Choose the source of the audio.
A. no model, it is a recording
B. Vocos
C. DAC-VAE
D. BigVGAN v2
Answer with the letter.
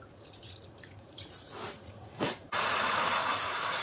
B